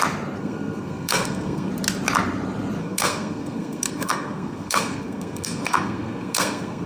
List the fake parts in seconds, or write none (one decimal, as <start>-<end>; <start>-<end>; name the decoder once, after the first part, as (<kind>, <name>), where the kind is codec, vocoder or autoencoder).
0.4-1.7 (codec, SNAC); 2.8-6.9

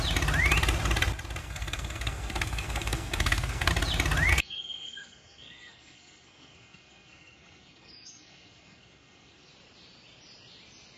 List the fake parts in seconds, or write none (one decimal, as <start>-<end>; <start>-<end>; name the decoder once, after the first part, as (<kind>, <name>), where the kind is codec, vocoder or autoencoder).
1.4-3.7 (codec, SNAC); 4.3-9.5